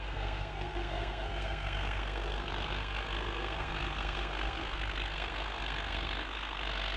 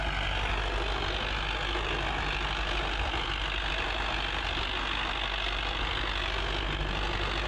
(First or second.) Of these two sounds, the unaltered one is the second